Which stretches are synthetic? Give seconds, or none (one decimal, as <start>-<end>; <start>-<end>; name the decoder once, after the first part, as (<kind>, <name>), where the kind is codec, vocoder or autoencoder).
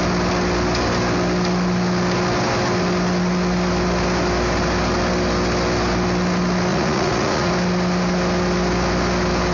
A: 6.7-7.5 (vocoder, Vocos)